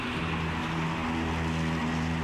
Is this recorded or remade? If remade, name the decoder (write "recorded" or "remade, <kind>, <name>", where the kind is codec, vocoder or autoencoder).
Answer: recorded